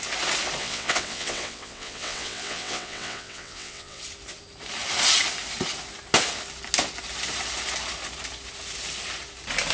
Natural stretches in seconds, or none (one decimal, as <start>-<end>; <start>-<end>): 0.0-0.6; 4.0-9.7

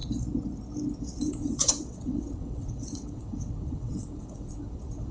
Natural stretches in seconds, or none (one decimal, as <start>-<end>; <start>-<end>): 0.0-1.0

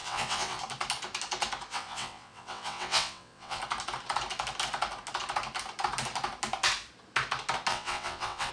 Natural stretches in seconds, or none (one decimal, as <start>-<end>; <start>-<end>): 0.6-1.7; 3.6-7.7